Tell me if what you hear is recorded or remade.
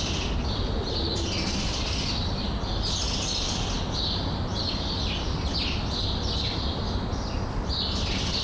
recorded